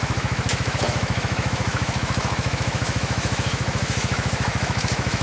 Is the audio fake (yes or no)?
yes